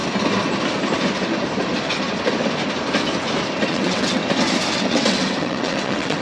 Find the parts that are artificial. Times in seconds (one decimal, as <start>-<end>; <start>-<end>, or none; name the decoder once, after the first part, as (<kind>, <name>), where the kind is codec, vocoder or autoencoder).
3.7-4.2 (vocoder, WaveNeXt); 4.7-6.2